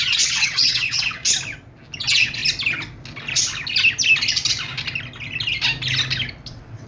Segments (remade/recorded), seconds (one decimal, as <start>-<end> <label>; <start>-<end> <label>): 0.0-1.2 remade; 1.2-2.0 recorded; 2.0-2.4 remade; 2.4-6.5 recorded; 6.5-6.9 remade